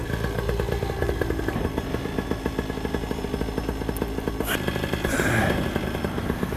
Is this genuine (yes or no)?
yes